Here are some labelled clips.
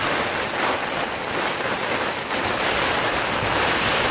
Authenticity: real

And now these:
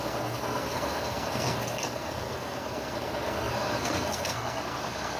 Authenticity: fake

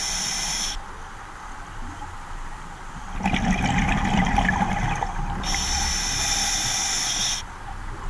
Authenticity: real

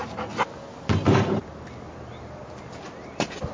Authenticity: real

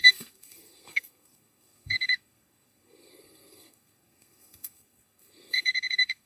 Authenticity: fake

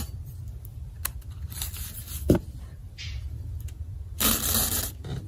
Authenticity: real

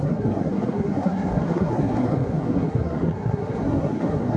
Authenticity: fake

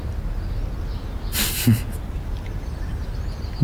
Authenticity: real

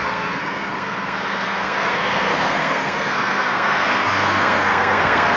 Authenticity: fake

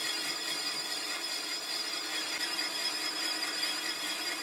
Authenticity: real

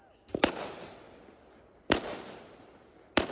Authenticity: real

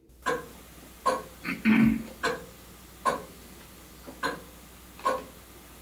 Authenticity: real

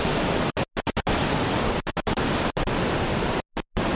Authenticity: real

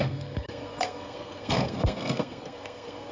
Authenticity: fake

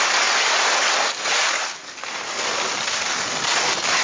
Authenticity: real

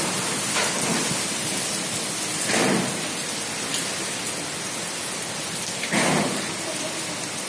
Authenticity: real